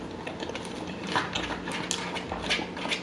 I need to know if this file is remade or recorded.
recorded